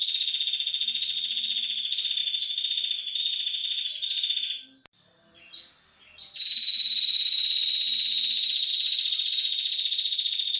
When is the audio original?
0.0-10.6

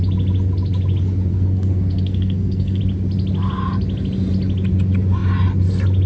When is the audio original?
0.0-1.3; 2.8-6.1